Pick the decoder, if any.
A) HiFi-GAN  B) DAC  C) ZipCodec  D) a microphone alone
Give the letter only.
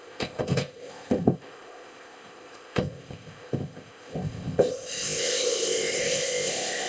C